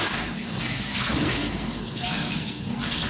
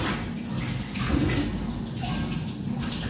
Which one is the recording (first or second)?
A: second